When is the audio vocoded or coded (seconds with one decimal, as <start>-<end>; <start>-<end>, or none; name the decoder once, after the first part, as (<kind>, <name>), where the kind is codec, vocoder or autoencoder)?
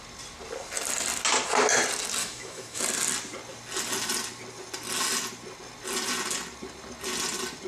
2.2-2.8 (autoencoder, DAC-VAE)